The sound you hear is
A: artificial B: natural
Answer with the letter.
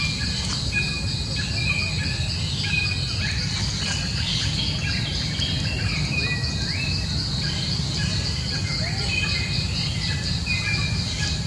B